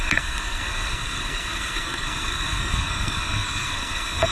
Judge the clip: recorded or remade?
remade